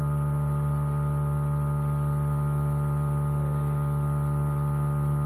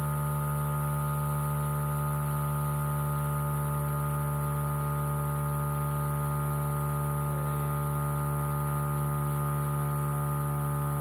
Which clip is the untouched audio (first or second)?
second